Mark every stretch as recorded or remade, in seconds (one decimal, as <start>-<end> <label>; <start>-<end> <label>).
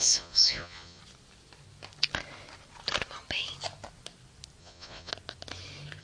0.0-1.0 remade; 1.0-4.6 recorded; 4.6-5.1 remade; 5.1-6.0 recorded